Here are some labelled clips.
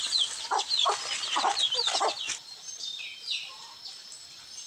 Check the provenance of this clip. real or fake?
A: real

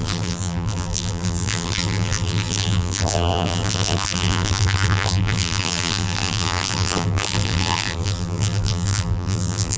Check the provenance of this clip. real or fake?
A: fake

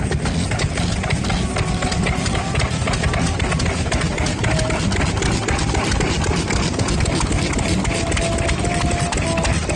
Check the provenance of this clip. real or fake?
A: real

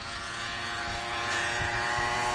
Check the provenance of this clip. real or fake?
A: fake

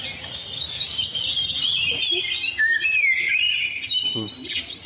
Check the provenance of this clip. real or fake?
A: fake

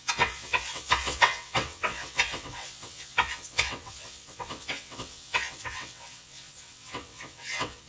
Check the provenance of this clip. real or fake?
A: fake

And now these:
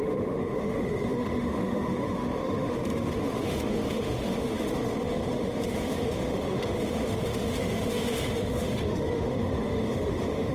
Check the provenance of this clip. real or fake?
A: fake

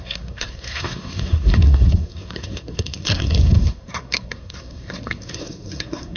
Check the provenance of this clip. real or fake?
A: fake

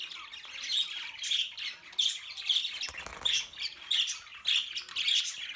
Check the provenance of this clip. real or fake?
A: real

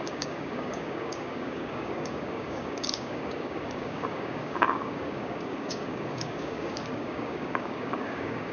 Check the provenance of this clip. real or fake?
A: fake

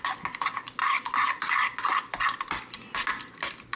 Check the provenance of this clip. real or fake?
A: real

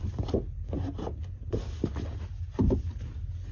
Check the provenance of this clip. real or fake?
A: real